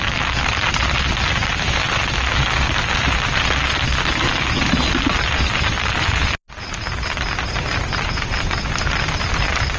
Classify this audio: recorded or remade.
recorded